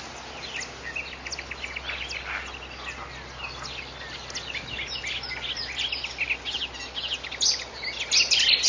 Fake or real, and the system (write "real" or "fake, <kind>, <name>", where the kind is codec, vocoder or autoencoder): real